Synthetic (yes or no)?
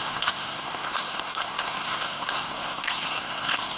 yes